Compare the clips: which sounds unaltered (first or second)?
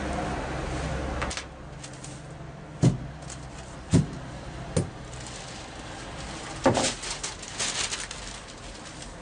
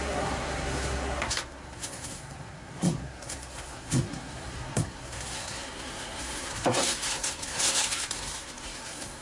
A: first